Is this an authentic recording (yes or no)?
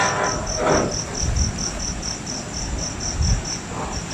yes